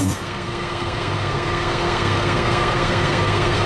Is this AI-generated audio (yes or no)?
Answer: yes